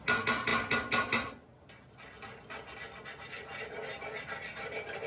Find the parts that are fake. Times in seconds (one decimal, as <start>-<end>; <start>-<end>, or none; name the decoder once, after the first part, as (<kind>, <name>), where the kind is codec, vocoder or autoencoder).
none